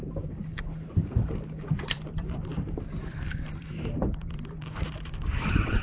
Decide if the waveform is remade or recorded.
remade